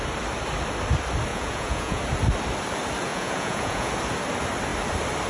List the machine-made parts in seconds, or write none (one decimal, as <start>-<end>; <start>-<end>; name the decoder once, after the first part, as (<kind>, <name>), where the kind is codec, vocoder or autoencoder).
1.3-2.0 (vocoder, Vocos); 3.1-3.9